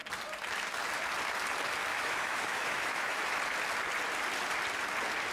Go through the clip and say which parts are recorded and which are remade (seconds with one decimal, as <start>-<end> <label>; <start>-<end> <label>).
0.0-1.9 recorded; 1.9-3.2 remade; 3.2-5.3 recorded